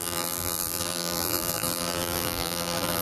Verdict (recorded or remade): remade